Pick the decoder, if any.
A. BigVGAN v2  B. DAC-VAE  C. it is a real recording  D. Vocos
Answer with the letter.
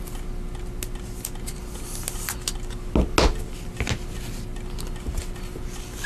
C